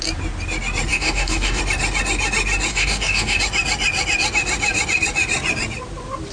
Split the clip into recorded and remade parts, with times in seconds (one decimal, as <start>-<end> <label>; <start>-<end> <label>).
0.0-0.9 recorded; 0.9-1.6 remade; 1.6-2.7 recorded; 2.7-3.4 remade; 3.4-6.3 recorded